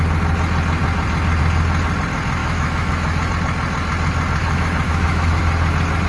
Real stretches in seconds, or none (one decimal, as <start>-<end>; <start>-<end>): 0.0-2.4; 3.3-4.4; 5.4-6.1